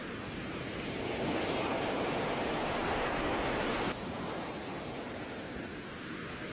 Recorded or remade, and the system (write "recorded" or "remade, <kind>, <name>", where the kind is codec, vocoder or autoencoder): recorded